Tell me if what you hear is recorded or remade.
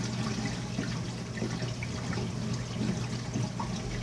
recorded